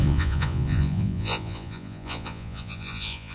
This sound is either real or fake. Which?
fake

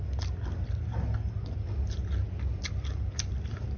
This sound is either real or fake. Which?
real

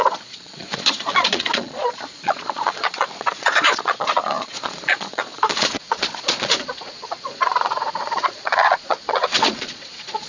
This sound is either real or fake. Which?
fake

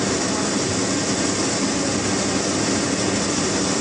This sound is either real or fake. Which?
real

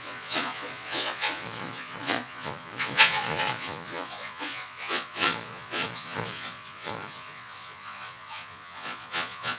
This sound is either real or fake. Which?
fake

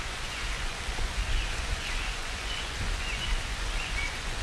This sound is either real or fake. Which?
fake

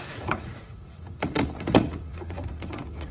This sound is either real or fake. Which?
fake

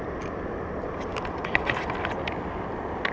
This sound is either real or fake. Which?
real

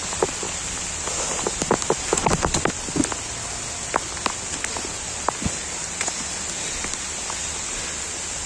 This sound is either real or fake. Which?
real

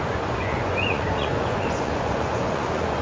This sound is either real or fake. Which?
fake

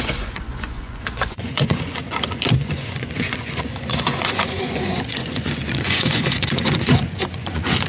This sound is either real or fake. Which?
fake